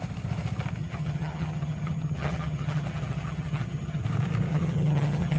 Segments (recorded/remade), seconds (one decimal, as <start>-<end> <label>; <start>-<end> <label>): 0.0-0.8 recorded; 0.8-4.0 remade; 4.0-4.5 recorded; 4.5-5.4 remade

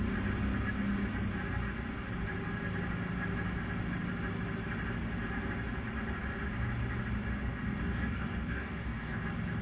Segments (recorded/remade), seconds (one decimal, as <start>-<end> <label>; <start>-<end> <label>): 0.0-7.5 recorded; 7.5-9.2 remade; 9.2-9.6 recorded

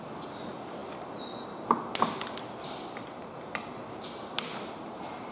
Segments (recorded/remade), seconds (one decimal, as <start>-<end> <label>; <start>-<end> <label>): 0.0-5.3 recorded

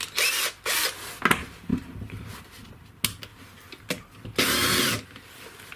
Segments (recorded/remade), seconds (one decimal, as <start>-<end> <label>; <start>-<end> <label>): 0.0-1.7 recorded; 1.7-2.4 remade; 2.4-5.8 recorded

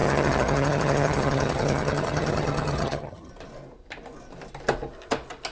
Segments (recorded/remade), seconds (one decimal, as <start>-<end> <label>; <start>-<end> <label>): 0.0-3.3 remade; 3.3-5.5 recorded

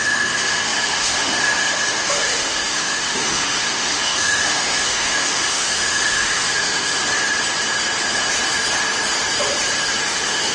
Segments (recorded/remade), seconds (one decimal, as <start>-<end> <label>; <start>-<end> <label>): 0.0-7.0 remade; 7.0-10.0 recorded; 10.0-10.5 remade